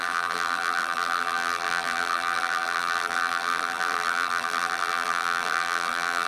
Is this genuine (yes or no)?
no